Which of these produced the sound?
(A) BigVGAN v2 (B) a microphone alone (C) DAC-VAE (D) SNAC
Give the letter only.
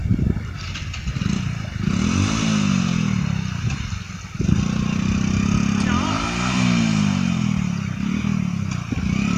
B